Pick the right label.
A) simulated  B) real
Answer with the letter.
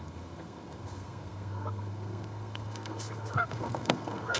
A